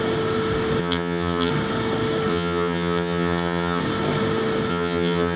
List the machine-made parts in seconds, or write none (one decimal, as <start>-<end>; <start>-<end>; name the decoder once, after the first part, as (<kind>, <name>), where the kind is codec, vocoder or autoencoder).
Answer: 0.8-1.5 (vocoder, HiFi-GAN); 2.3-3.8; 4.7-5.4